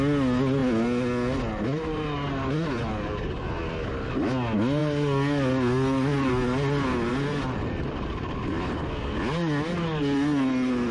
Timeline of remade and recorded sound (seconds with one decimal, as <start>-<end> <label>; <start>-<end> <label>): 0.0-10.9 recorded